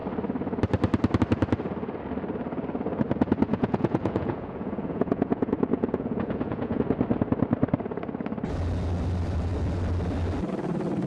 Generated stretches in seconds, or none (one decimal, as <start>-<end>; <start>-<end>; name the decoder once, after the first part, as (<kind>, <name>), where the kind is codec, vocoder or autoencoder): 3.5-6.8 (vocoder, Vocos)